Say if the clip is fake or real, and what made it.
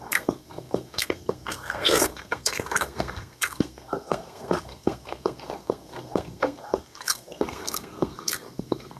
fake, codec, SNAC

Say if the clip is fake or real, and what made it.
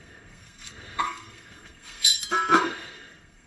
fake, codec, SNAC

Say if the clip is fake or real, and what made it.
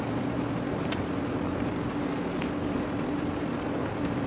real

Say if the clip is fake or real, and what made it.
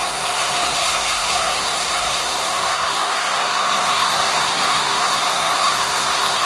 fake, codec, SNAC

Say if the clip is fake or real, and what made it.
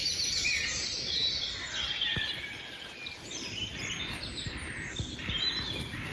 real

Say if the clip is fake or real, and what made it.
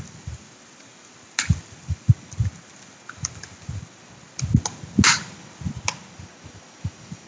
real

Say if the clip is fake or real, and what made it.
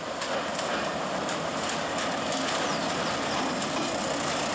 real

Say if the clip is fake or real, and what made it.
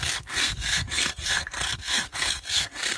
fake, codec, SNAC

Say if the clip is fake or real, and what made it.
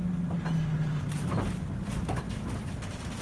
real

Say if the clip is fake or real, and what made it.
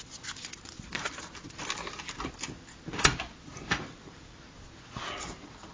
real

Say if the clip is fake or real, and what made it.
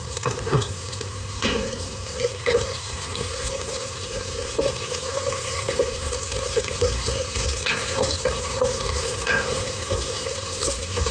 fake, codec, SNAC